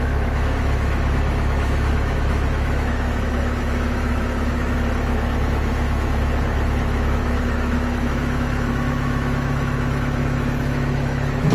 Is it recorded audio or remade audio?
remade